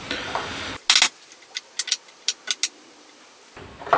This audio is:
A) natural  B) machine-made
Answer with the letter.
A